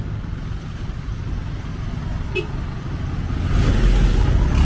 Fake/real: real